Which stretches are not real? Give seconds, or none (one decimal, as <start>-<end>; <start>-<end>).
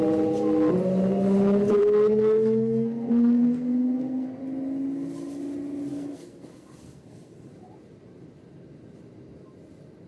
1.8-4.4; 5.9-7.5